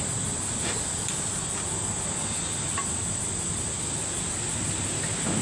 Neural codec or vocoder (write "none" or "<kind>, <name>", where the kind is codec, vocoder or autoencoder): none